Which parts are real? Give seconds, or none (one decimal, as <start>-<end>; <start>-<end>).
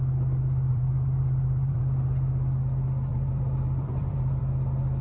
0.0-0.7; 1.8-3.1; 4.4-5.0